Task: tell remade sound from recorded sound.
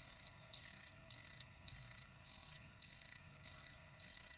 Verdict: remade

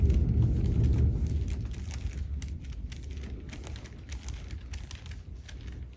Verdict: recorded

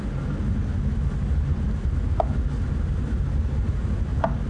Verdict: recorded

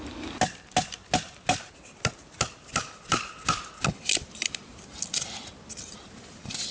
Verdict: recorded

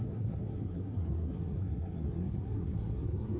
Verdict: remade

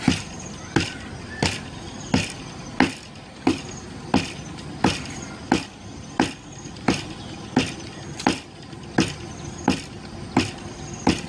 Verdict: recorded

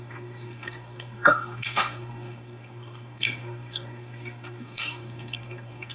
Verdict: remade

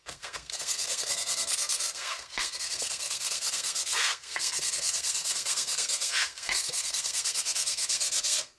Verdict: remade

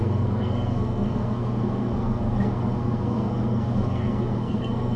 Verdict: remade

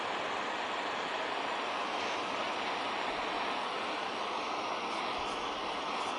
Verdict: recorded